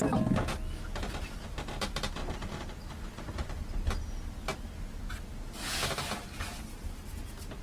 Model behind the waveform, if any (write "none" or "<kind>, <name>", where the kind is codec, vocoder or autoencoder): none